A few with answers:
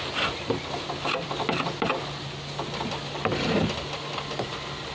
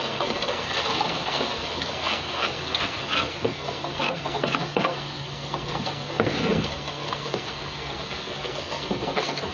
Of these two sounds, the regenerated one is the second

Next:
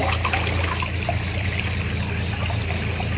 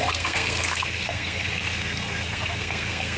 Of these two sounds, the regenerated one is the second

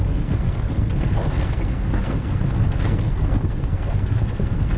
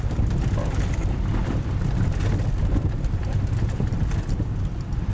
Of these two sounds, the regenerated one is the first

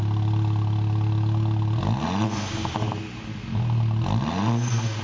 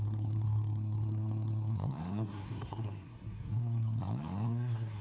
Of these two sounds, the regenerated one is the second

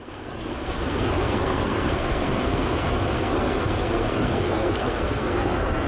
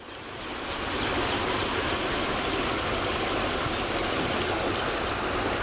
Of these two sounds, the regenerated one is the first